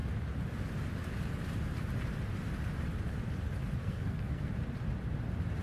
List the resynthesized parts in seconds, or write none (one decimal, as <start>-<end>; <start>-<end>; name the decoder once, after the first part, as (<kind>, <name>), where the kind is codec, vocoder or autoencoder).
3.8-4.5 (codec, SNAC)